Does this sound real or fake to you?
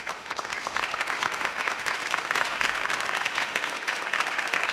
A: fake